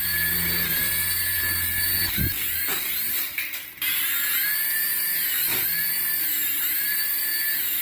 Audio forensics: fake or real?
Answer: real